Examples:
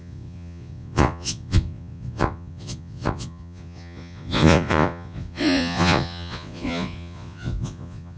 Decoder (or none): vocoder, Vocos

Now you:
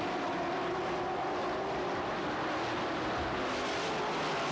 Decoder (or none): none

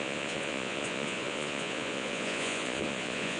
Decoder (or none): vocoder, Vocos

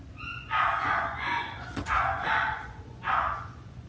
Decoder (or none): vocoder, Vocos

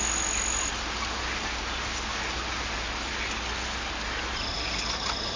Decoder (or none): none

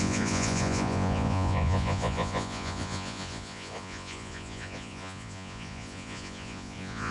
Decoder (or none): vocoder, Vocos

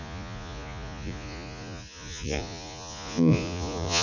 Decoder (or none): vocoder, Vocos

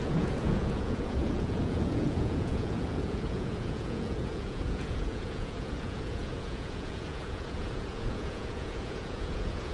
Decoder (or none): vocoder, Vocos